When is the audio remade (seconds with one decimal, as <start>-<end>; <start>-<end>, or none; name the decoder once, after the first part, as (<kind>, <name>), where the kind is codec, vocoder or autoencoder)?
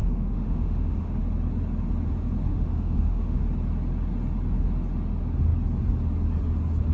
0.0-1.2 (autoencoder, DAC-VAE); 2.5-3.4